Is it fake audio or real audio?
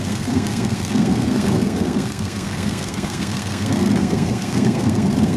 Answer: fake